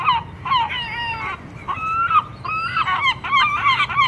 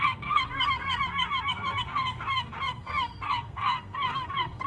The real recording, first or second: first